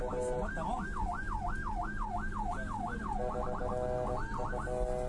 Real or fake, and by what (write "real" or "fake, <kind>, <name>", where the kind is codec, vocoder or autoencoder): real